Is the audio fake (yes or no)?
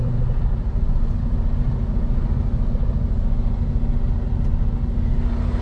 no